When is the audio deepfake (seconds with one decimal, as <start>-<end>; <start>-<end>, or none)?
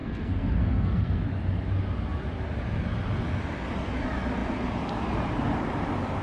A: 0.0-1.2